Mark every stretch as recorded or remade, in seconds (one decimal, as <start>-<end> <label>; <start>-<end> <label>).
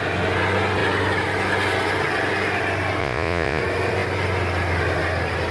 0.0-3.0 recorded; 3.0-3.6 remade; 3.6-5.5 recorded